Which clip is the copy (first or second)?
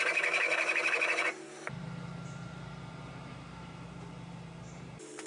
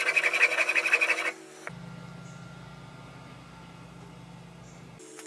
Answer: first